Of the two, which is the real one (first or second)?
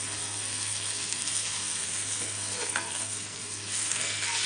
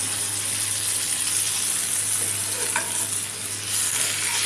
second